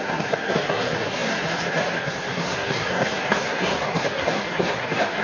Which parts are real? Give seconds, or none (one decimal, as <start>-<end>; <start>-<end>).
none